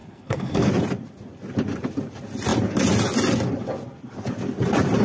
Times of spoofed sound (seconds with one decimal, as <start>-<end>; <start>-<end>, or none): 0.0-0.7